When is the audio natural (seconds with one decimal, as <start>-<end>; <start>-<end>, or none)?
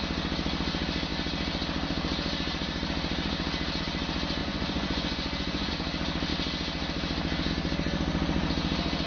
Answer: 0.0-4.4; 5.7-9.1